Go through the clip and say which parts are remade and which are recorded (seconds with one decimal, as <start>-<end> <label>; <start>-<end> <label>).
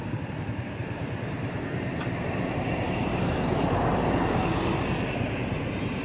0.0-0.8 recorded; 0.8-4.4 remade; 4.4-6.0 recorded